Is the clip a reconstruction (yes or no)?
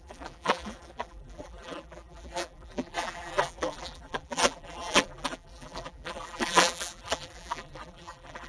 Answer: yes